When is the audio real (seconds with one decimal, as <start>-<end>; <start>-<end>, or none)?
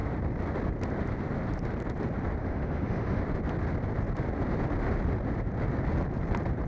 0.0-2.4; 3.2-6.7